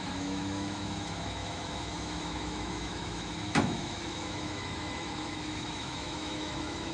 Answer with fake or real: fake